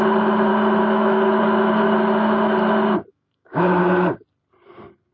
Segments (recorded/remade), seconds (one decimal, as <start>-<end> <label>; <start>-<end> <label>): 0.0-0.5 recorded; 0.5-1.4 remade; 1.4-3.1 recorded; 3.1-3.8 remade; 3.8-5.1 recorded